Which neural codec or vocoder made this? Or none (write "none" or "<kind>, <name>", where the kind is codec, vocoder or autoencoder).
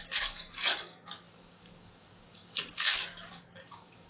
codec, DAC